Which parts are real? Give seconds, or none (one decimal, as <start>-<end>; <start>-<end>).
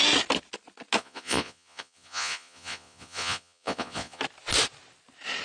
0.0-1.0; 4.2-5.4